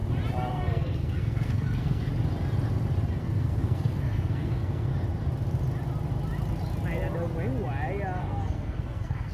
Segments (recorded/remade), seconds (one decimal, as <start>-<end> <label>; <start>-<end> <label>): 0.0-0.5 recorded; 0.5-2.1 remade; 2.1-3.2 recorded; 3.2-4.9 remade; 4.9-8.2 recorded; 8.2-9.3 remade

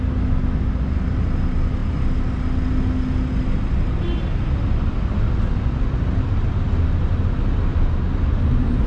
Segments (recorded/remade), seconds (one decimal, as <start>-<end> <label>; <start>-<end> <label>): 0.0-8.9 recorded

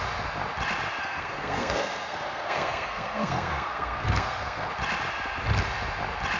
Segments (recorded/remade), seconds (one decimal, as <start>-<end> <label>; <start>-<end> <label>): 0.0-1.0 recorded; 1.0-4.7 remade; 4.7-6.4 recorded

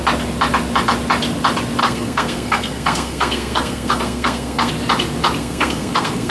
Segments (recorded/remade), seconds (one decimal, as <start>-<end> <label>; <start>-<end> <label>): 0.0-1.8 recorded; 1.8-4.7 remade; 4.7-5.4 recorded; 5.4-6.3 remade

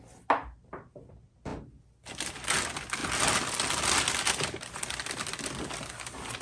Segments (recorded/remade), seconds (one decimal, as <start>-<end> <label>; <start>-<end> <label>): 0.0-6.4 recorded

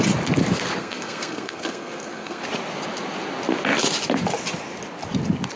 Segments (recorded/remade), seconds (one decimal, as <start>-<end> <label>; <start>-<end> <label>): 0.0-0.8 recorded; 0.8-2.4 remade; 2.4-5.6 recorded

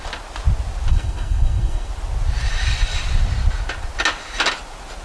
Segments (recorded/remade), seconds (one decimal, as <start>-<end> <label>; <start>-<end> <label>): 0.0-0.9 recorded; 0.9-1.9 remade; 1.9-5.0 recorded